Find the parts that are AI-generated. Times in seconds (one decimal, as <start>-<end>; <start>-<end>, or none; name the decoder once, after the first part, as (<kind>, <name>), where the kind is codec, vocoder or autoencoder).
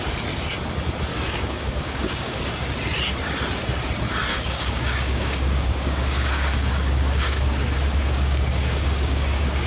1.1-2.4 (codec, DAC); 4.3-9.7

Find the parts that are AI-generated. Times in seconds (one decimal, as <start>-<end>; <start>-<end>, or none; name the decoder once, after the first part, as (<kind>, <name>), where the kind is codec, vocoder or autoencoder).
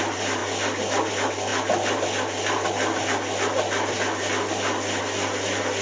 none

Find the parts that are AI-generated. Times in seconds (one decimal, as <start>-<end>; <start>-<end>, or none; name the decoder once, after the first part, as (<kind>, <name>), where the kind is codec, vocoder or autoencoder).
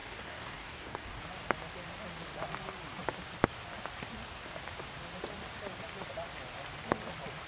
0.0-1.2 (codec, DAC)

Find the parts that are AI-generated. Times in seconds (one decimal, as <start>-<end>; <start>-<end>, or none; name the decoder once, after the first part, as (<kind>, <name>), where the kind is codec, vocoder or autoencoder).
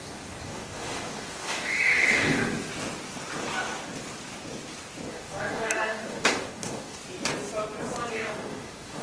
0.0-2.4 (codec, DAC); 5.1-7.0; 8.1-9.0